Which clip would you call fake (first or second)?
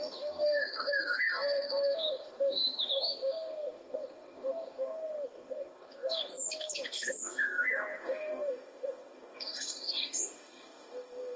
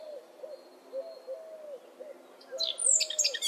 first